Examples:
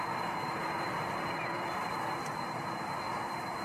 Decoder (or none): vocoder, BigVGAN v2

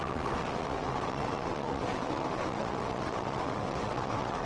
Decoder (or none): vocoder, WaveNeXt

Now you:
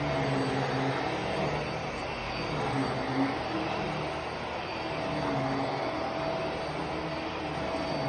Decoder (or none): none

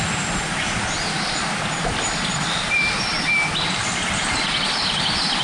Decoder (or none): none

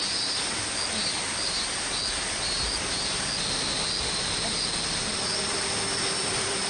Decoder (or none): none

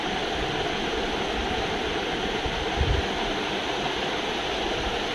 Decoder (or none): none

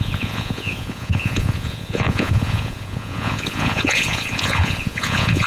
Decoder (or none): vocoder, Vocos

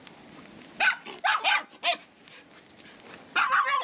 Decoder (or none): none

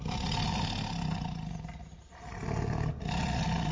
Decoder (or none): none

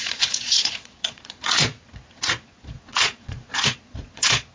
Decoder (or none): vocoder, Vocos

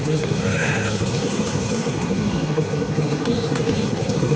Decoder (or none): codec, SNAC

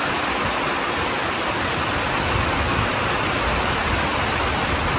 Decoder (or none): none